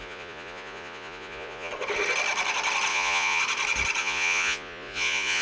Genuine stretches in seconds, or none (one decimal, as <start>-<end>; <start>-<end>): 1.7-2.9; 3.4-4.0